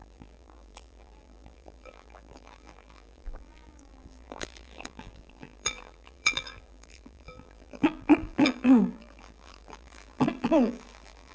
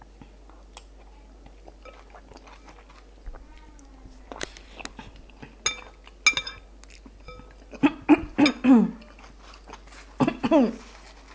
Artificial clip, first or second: first